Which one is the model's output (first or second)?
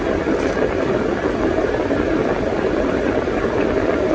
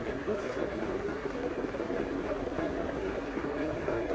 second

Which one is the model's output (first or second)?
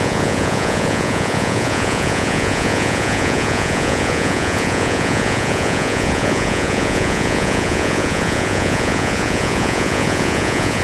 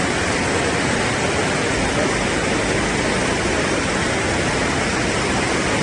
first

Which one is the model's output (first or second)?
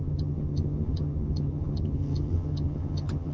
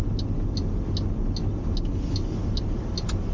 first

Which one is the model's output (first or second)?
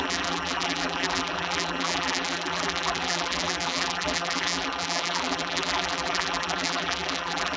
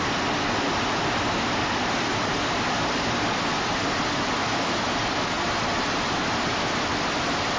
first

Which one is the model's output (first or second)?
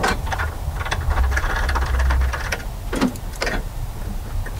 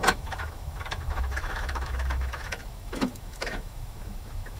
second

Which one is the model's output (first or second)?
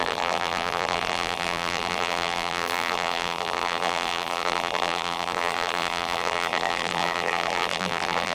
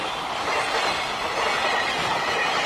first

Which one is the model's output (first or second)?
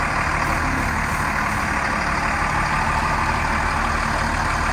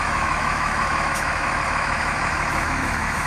second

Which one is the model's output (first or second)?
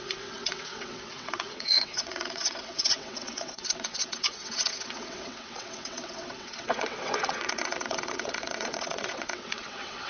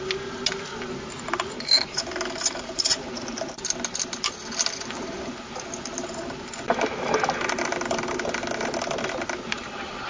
first